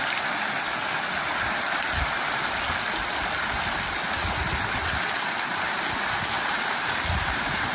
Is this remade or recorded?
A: recorded